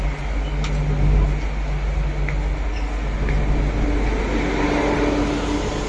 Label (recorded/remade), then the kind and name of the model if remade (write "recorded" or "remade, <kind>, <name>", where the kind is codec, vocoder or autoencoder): recorded